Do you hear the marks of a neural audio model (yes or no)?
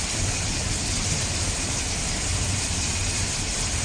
no